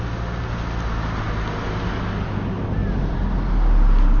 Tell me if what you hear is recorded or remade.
recorded